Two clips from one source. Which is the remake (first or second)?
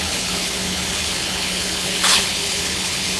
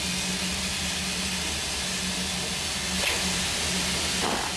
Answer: first